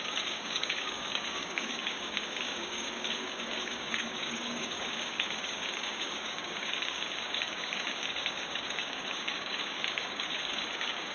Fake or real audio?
fake